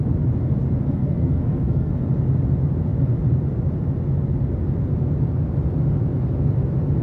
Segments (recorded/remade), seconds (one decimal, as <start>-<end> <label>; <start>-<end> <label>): 0.0-1.0 recorded; 1.0-1.9 remade; 1.9-7.0 recorded